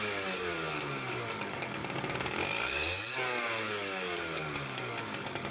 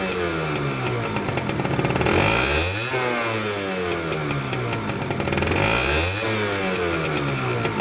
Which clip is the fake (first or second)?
first